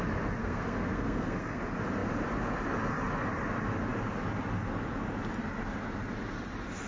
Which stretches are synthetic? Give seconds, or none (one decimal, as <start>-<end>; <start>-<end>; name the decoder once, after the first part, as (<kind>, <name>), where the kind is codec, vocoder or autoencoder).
0.4-1.6 (codec, SNAC)